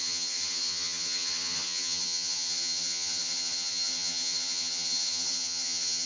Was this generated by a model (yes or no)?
yes